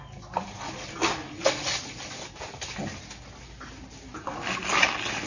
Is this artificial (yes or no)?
no